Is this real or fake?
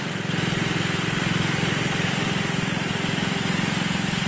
real